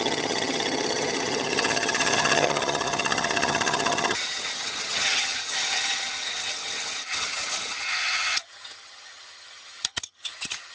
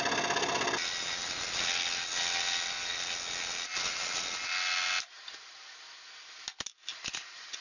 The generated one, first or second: first